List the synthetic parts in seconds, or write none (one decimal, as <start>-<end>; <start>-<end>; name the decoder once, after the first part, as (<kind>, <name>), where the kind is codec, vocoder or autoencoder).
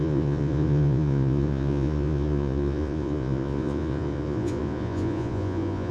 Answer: 0.0-5.9 (vocoder, Vocos)